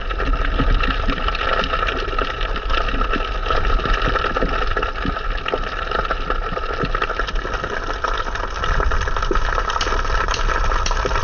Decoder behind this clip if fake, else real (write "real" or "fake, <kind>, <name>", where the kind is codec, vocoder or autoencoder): fake, vocoder, BigVGAN v2